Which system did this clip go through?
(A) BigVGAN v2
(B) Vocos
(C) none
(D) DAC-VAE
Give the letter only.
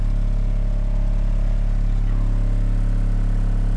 C